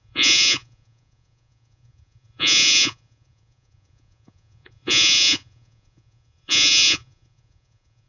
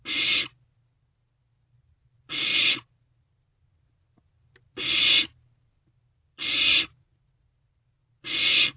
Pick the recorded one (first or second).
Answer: second